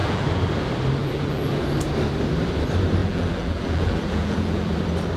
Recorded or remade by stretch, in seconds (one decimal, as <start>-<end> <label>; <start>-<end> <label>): 0.0-0.5 remade; 0.5-1.0 recorded; 1.0-1.5 remade; 1.5-3.0 recorded; 3.0-4.8 remade; 4.8-5.2 recorded